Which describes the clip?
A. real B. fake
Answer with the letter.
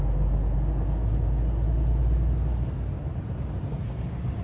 A